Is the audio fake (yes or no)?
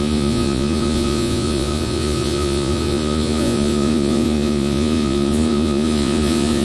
yes